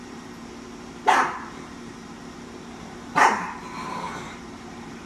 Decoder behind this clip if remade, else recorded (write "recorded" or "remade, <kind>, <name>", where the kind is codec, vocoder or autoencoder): remade, vocoder, BigVGAN v2